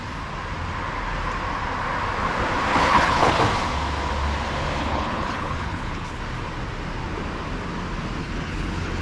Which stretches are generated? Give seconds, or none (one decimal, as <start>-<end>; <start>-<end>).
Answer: 2.7-3.4; 4.8-6.2; 8.2-9.0